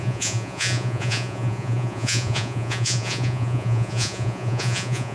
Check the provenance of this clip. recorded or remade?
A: remade